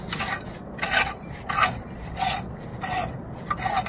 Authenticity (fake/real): real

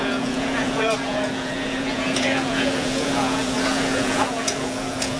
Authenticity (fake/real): fake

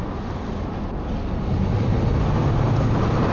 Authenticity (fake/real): real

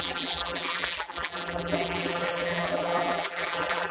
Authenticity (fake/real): fake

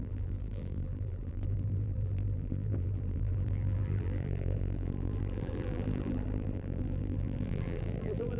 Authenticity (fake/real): fake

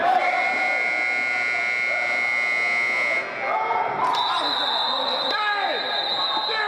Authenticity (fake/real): real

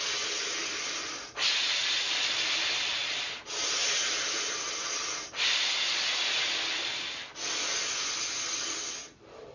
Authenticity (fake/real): real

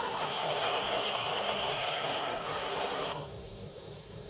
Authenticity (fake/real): fake